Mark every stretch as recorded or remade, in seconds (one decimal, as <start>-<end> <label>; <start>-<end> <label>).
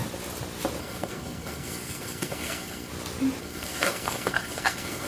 0.0-0.8 recorded; 0.8-2.9 remade; 2.9-3.4 recorded; 3.4-5.1 remade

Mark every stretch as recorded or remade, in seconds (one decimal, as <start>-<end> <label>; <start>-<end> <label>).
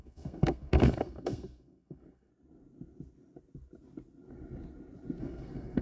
0.0-2.3 remade; 2.3-5.2 recorded; 5.2-5.8 remade